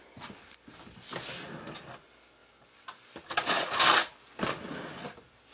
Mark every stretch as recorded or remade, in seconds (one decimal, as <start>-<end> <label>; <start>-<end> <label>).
0.0-5.5 recorded